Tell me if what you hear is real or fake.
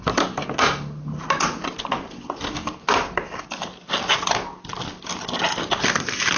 real